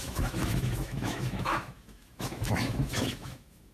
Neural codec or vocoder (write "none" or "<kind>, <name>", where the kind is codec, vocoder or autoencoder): autoencoder, DAC-VAE